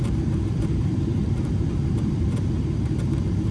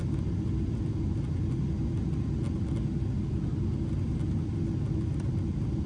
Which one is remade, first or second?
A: first